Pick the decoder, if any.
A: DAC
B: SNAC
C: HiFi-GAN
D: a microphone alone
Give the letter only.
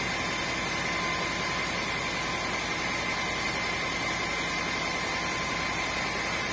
D